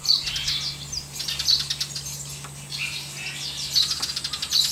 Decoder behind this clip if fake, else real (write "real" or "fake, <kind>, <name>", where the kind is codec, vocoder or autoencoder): real